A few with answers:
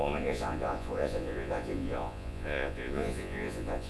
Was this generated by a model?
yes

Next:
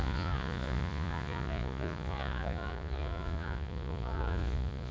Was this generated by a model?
yes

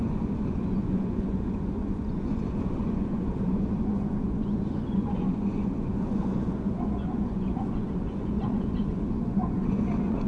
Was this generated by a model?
yes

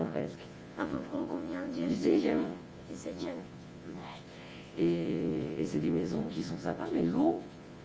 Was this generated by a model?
yes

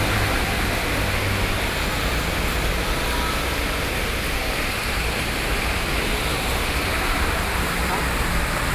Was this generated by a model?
no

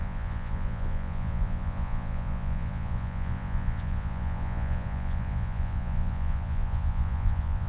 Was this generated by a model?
yes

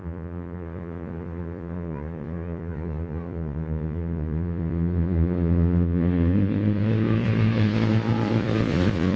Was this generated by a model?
yes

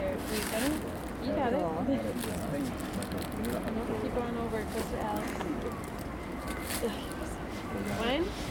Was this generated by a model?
no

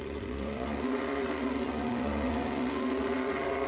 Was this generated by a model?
yes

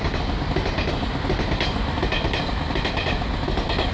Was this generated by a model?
no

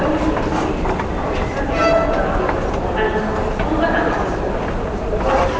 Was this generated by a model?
no